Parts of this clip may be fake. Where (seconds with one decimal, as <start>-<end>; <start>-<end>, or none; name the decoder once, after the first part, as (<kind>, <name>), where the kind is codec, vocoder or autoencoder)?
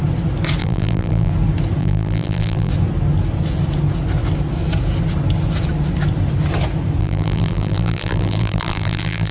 0.6-1.3 (vocoder, BigVGAN v2); 1.8-2.7; 7.0-9.3